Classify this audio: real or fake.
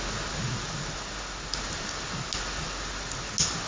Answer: real